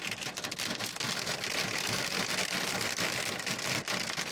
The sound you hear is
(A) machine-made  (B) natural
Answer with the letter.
B